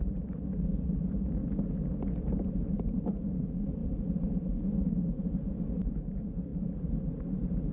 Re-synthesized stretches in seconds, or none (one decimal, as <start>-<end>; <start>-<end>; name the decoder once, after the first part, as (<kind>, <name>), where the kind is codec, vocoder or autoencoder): 0.0-1.4 (vocoder, BigVGAN v2); 2.3-7.7